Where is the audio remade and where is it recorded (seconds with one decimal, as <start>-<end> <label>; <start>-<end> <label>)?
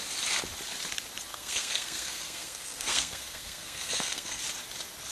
0.0-1.3 recorded; 1.3-4.4 remade; 4.4-5.1 recorded